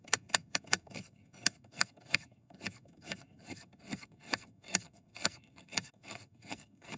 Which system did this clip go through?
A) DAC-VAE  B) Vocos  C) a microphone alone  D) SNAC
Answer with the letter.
D